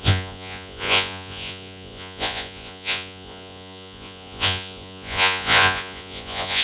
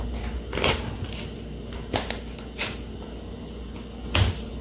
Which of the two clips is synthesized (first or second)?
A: first